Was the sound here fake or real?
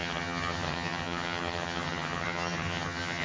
fake